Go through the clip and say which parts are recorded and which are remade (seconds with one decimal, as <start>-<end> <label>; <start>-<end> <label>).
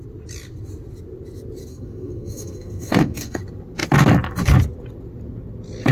0.0-1.7 recorded; 1.7-3.4 remade; 3.4-5.9 recorded